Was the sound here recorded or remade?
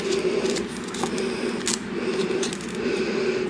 recorded